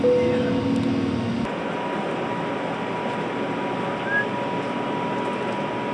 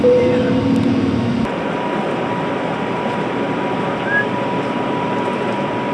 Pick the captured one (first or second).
first